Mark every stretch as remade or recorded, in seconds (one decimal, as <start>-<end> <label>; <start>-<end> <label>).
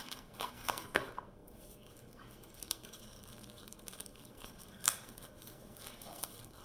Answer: 0.0-6.6 remade